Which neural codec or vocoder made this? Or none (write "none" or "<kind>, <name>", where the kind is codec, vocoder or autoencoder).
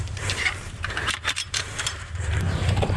vocoder, BigVGAN v2